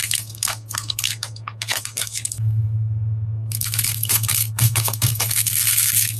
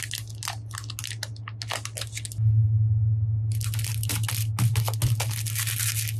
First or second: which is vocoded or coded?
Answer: first